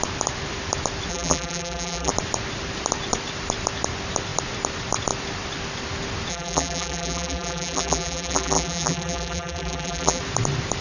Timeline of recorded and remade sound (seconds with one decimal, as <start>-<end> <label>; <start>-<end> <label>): 0.0-1.1 recorded; 1.1-2.1 remade; 2.1-6.3 recorded; 6.3-10.2 remade; 10.2-10.8 recorded